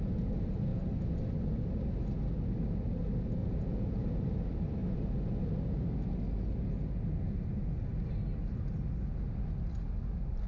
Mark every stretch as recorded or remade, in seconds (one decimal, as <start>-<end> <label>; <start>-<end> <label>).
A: 0.0-3.4 recorded; 3.4-4.1 remade; 4.1-10.5 recorded